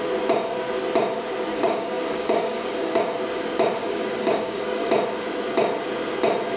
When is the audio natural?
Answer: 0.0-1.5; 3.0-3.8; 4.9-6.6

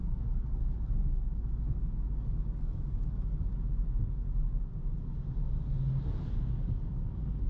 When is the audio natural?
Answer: 3.5-6.2